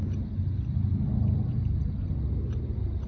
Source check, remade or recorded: recorded